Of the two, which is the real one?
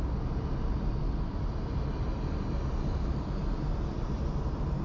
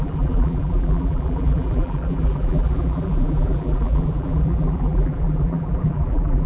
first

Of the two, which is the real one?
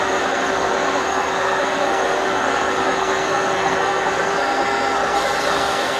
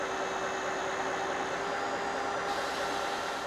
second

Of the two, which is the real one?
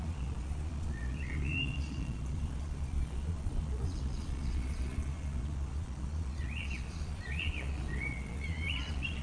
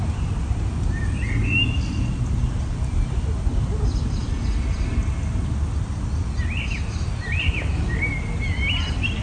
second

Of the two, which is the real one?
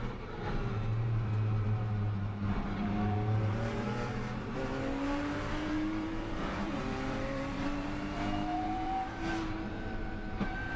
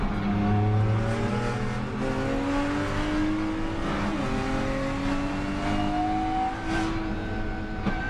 second